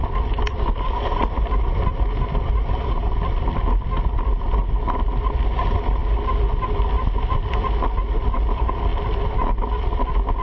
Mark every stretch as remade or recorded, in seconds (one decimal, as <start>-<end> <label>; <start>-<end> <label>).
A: 0.0-10.4 recorded